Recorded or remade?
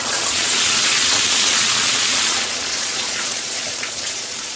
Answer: remade